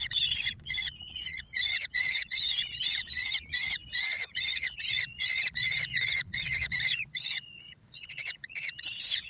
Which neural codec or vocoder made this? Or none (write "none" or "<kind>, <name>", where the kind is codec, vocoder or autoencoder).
vocoder, Vocos